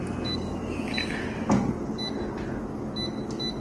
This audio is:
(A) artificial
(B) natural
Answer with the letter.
B